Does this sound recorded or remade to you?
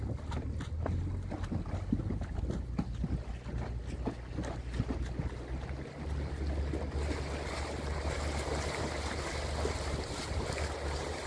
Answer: recorded